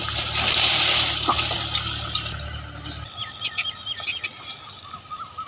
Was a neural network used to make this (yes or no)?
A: no